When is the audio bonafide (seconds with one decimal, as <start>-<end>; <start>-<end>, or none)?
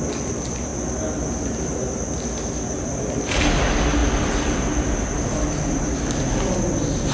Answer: 0.0-7.1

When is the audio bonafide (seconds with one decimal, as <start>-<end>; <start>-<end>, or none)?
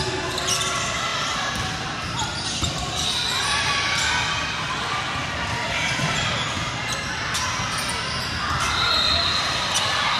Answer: 0.0-1.1; 5.7-10.2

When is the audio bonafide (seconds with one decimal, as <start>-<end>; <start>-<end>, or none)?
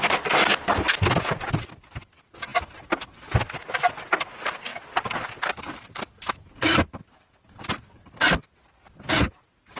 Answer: 0.0-9.8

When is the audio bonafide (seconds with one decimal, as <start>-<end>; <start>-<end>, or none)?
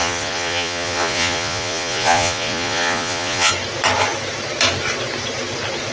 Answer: 3.5-5.9